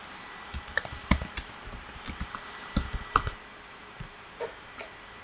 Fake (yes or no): yes